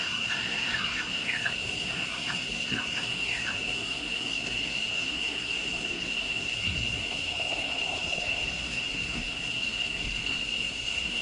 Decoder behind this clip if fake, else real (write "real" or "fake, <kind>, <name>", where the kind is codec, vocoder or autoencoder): fake, codec, SNAC